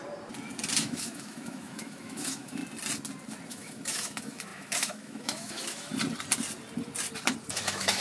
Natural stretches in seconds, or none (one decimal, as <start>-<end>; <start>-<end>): 0.0-0.8; 2.6-3.5; 5.9-7.5